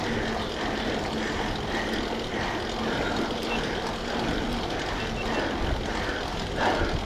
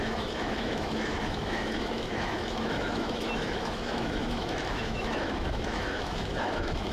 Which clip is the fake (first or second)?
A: second